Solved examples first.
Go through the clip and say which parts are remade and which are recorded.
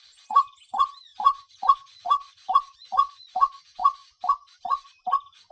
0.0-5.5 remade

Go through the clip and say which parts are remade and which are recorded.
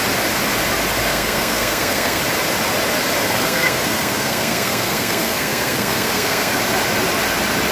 0.0-1.1 recorded; 1.1-2.2 remade; 2.2-3.4 recorded; 3.4-6.6 remade; 6.6-7.7 recorded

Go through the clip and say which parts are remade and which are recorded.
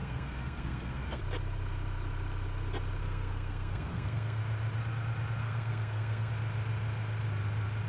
0.0-1.2 remade; 1.2-3.0 recorded; 3.0-4.4 remade; 4.4-5.4 recorded; 5.4-6.3 remade; 6.3-7.9 recorded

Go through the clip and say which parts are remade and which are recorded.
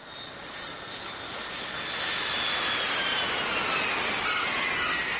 0.0-5.2 recorded